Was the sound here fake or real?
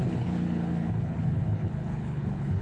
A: fake